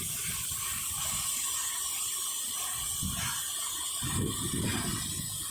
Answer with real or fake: real